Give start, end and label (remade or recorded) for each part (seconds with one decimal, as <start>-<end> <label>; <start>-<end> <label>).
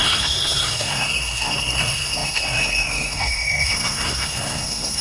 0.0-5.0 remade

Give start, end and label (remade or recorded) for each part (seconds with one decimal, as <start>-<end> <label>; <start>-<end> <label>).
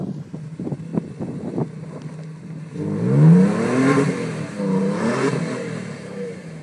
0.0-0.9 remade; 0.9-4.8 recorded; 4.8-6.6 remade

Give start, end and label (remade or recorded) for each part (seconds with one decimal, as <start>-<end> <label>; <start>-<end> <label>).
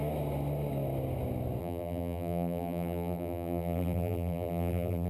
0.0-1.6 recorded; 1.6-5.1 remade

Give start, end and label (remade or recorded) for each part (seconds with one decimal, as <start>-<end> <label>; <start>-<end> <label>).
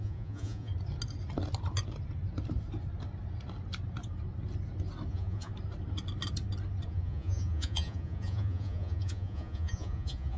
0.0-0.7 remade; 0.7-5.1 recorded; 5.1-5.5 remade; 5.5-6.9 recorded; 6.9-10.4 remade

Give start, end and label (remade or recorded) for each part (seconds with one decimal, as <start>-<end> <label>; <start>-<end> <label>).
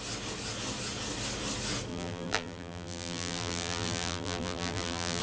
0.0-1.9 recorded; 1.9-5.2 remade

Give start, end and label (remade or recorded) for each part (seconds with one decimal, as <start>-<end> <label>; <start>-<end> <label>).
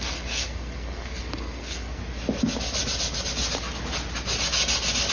0.0-2.0 remade; 2.0-5.1 recorded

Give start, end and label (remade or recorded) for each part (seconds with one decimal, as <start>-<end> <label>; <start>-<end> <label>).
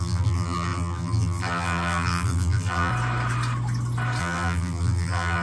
0.0-2.9 remade; 2.9-4.2 recorded; 4.2-5.4 remade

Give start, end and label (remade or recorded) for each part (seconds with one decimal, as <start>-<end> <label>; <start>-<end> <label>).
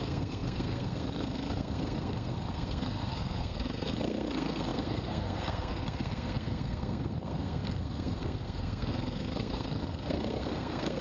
0.0-11.0 remade